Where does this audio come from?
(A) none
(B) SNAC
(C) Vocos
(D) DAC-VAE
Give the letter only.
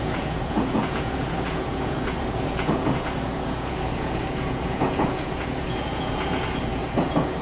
C